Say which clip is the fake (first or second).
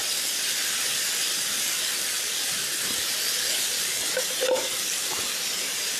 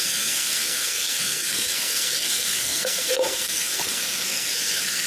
second